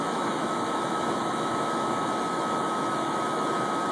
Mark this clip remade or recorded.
remade